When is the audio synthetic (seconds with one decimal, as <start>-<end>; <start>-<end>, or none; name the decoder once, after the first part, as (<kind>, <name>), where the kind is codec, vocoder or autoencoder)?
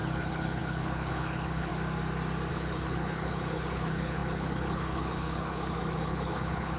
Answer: 0.0-1.7 (codec, HILCodec); 2.5-6.8